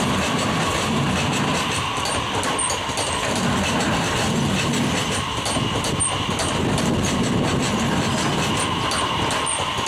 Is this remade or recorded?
recorded